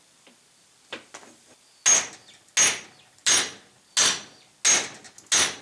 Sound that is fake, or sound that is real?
real